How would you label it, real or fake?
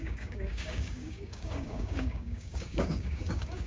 fake